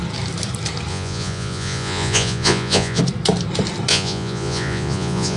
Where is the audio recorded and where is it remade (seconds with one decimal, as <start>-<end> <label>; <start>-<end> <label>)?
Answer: 0.0-0.9 recorded; 0.9-3.0 remade; 3.0-3.9 recorded; 3.9-5.4 remade